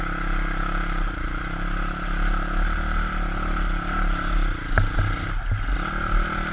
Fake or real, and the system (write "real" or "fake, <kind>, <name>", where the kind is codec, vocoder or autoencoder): real